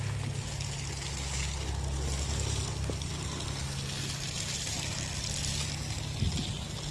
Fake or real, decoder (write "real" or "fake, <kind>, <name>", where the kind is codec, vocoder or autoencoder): real